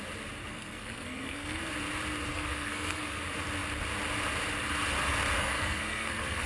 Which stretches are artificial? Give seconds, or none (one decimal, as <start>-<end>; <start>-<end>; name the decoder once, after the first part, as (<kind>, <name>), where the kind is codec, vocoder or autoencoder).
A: 0.4-1.6 (codec, SNAC); 2.3-3.2; 5.4-6.5